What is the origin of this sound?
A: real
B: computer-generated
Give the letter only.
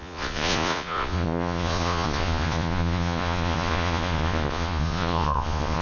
B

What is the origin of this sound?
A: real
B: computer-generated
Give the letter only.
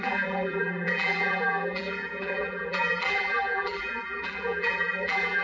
B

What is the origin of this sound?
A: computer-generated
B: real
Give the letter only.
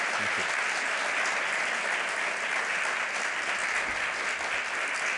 B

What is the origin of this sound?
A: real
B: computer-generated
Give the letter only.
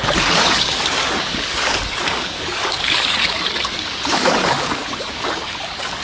B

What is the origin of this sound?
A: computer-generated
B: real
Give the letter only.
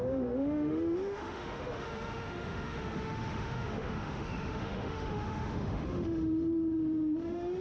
A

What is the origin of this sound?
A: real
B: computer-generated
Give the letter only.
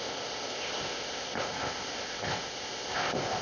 B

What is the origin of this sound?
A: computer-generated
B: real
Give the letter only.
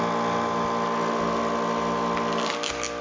B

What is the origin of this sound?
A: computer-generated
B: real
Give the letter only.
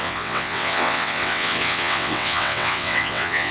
A